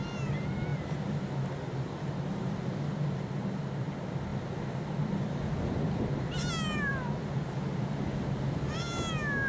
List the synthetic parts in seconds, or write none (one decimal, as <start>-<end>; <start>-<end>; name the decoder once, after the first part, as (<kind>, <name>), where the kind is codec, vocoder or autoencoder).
none